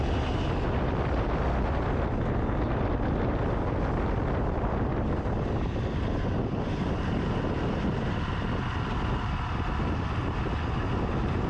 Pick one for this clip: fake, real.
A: real